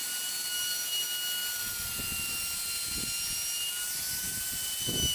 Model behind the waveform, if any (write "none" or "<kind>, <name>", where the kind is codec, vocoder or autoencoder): none